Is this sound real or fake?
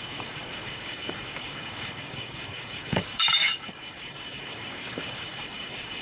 fake